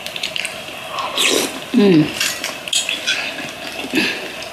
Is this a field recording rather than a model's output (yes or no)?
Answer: yes